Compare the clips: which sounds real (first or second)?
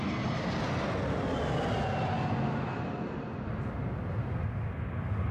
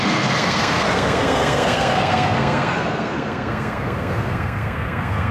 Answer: first